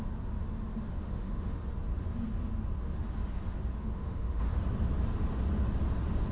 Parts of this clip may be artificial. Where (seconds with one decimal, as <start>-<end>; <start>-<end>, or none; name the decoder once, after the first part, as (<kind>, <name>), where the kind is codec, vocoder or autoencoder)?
1.0-1.6 (autoencoder, DAC-VAE); 3.8-4.6

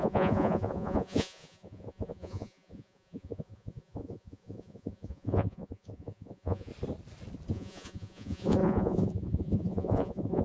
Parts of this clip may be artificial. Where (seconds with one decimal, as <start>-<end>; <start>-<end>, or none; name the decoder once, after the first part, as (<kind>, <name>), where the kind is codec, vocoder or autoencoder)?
0.0-6.7 (vocoder, Vocos); 7.5-10.4

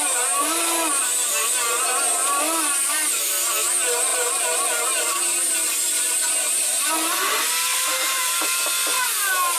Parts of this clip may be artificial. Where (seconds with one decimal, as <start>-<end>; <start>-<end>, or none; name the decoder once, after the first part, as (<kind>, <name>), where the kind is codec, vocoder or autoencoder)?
4.1-5.2 (vocoder, BigVGAN v2); 7.7-8.7

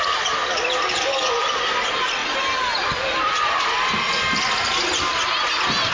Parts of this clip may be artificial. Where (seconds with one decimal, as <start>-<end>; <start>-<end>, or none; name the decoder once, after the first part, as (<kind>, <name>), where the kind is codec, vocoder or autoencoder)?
none

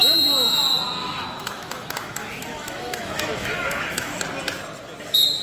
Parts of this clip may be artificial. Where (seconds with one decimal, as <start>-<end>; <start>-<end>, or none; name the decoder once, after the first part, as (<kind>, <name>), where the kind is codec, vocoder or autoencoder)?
1.0-4.2 (autoencoder, DAC-VAE)